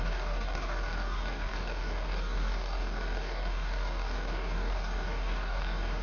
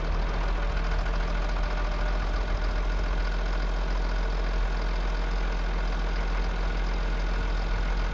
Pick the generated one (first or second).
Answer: first